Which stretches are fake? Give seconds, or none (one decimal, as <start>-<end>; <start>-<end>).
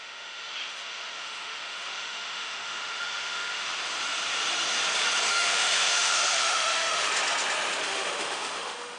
0.0-3.7; 5.3-7.1; 7.8-9.0